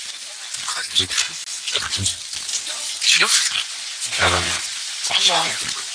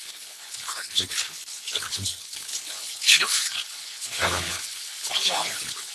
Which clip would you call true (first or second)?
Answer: first